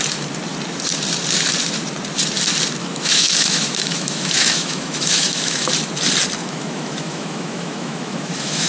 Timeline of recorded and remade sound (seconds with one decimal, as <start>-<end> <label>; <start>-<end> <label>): 0.0-2.8 recorded; 2.8-5.7 remade; 5.7-6.4 recorded; 6.4-8.7 remade